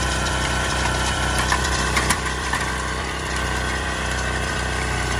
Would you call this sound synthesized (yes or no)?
yes